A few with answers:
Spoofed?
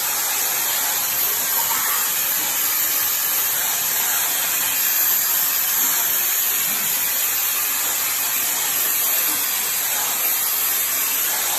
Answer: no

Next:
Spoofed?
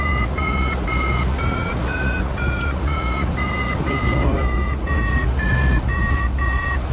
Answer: yes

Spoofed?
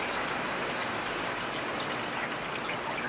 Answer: no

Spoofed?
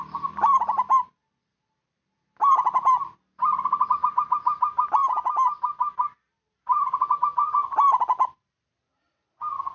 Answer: no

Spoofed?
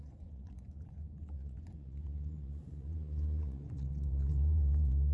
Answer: yes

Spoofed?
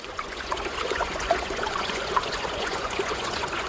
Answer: yes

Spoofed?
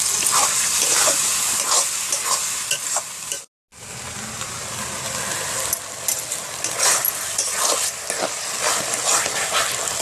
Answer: no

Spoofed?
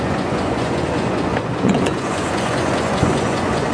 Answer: yes